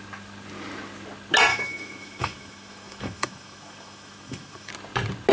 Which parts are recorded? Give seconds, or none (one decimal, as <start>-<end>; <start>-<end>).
0.0-1.5; 4.7-5.3